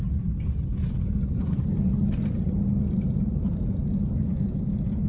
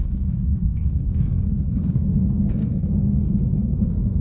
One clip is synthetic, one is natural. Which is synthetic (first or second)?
second